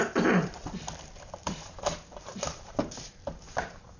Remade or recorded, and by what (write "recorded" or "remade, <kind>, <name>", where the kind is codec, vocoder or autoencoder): remade, vocoder, BigVGAN v2